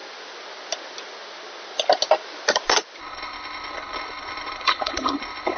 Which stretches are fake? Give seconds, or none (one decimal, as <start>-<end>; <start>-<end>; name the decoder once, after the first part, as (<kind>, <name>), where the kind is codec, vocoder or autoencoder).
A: 3.0-5.6 (codec, HILCodec)